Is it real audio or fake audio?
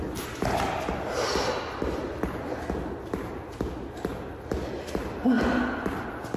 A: real